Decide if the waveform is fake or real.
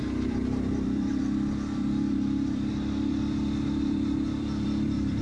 fake